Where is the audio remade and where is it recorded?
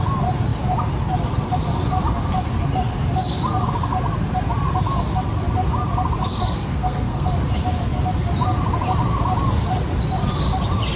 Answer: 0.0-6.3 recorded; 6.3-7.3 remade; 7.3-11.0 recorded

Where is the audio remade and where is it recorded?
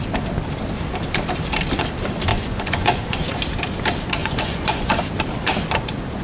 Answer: 0.0-2.3 recorded; 2.3-3.2 remade; 3.2-4.2 recorded; 4.2-5.0 remade; 5.0-6.2 recorded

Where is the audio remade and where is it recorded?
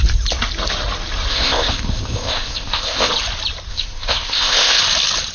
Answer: 0.0-1.3 recorded; 1.3-3.1 remade; 3.1-3.7 recorded; 3.7-4.8 remade; 4.8-5.3 recorded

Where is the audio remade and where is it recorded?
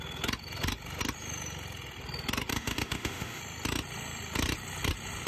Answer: 0.0-2.5 recorded; 2.5-3.4 remade; 3.4-5.3 recorded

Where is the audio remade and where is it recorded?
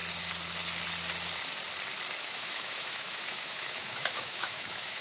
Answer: 0.0-2.2 recorded; 2.2-5.0 remade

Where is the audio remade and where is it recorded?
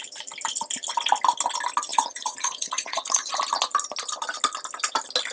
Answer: 0.0-1.9 recorded; 1.9-3.3 remade; 3.3-5.3 recorded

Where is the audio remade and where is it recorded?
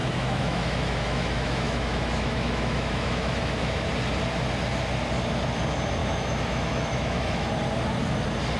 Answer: 0.0-3.9 remade; 3.9-6.0 recorded; 6.0-7.5 remade; 7.5-8.6 recorded